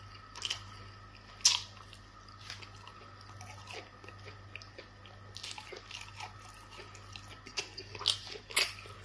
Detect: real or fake real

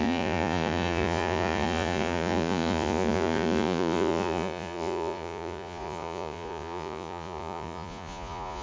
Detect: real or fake fake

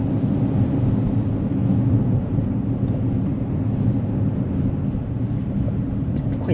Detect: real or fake real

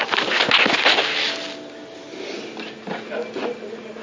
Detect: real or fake real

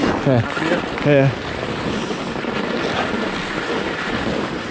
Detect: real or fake real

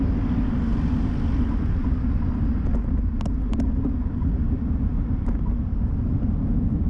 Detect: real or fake real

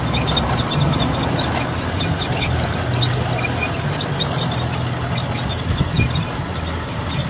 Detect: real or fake real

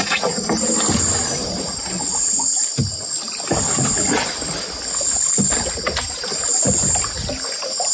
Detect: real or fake real